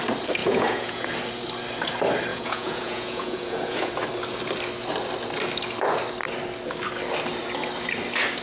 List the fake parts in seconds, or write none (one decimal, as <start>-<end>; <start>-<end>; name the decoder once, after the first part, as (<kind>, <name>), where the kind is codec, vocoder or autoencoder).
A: 0.4-1.1 (vocoder, Vocos); 2.3-3.9